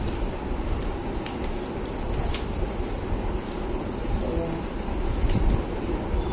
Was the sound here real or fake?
real